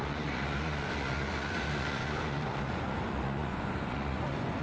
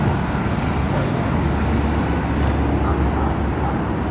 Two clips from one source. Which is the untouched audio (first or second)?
second